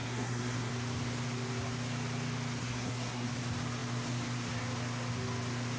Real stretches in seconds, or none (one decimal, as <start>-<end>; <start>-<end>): 0.7-2.6; 3.3-5.8